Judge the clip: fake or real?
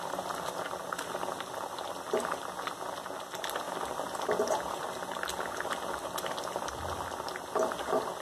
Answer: real